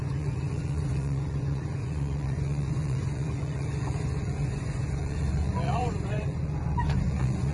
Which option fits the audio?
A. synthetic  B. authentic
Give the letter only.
A